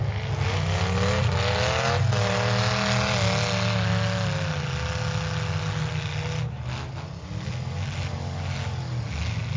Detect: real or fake real